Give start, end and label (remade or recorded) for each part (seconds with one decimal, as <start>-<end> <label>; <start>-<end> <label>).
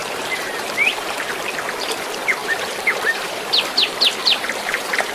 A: 0.0-1.3 remade; 1.3-2.4 recorded; 2.4-3.5 remade; 3.5-4.2 recorded; 4.2-5.1 remade